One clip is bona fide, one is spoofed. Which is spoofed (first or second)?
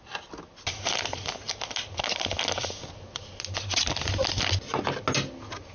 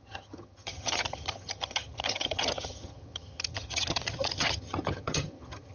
second